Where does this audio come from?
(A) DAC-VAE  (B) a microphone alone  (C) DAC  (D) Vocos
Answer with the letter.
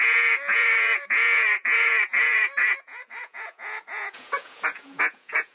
D